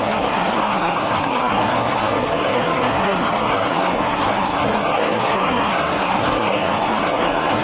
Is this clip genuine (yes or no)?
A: no